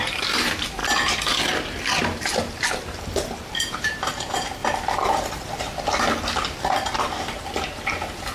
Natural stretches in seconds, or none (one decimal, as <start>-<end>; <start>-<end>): 0.8-2.0; 4.6-6.7